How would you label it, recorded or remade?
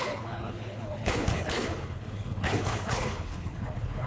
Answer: remade